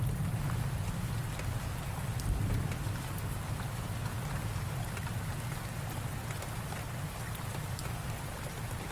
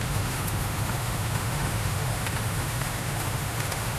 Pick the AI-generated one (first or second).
second